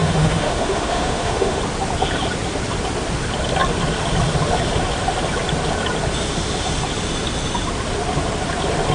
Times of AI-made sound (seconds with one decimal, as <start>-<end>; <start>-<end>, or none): 0.0-1.6